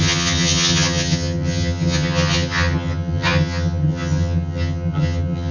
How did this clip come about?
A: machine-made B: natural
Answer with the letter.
A